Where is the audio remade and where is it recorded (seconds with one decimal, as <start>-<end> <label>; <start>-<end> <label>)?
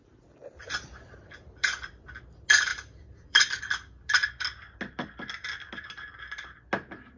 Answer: 0.0-2.7 recorded; 2.7-3.6 remade; 3.6-7.2 recorded